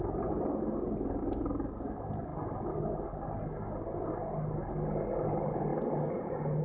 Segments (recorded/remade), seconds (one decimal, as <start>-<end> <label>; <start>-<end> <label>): 0.0-1.2 recorded; 1.2-1.7 remade; 1.7-6.6 recorded

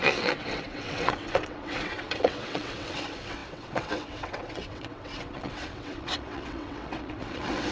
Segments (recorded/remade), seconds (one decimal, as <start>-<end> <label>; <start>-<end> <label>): 0.0-7.7 remade

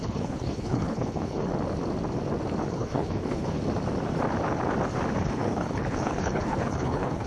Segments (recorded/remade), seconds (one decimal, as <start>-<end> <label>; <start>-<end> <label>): 0.0-1.5 remade; 1.5-2.7 recorded; 2.7-3.6 remade; 3.6-5.2 recorded; 5.2-7.3 remade

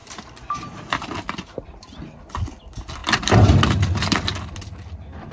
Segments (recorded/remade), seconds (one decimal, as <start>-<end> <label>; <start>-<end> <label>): 0.0-2.3 remade; 2.3-5.3 recorded